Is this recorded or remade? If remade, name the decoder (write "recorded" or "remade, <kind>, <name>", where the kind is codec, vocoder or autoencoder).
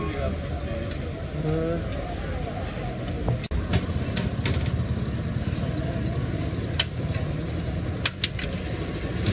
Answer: recorded